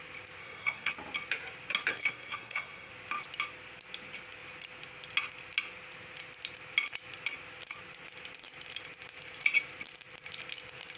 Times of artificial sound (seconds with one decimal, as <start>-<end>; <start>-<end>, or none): 0.4-0.9; 1.9-2.9